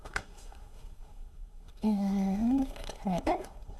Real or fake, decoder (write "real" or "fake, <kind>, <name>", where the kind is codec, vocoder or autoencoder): fake, codec, SNAC